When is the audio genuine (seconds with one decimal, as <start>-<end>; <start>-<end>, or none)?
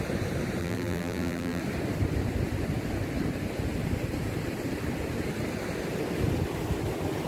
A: 0.0-0.6; 1.6-7.3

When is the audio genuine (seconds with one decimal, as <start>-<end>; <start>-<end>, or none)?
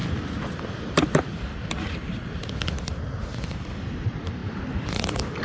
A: 0.0-3.2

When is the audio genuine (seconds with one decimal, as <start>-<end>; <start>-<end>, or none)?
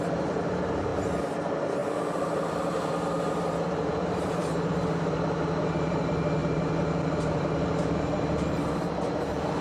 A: 0.9-1.4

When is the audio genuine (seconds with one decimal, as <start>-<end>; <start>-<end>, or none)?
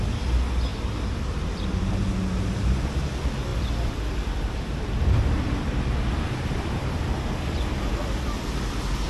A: 0.0-0.7; 1.9-3.5; 7.8-9.1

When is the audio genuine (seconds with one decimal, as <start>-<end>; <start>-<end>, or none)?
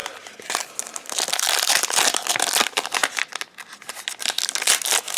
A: 0.0-5.2